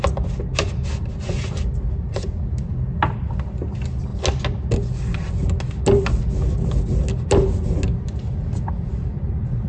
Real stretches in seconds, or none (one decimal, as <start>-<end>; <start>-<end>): 0.0-9.7